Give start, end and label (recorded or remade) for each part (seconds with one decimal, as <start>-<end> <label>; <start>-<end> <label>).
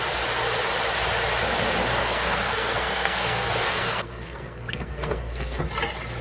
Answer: 0.0-2.0 recorded; 2.0-5.6 remade; 5.6-6.2 recorded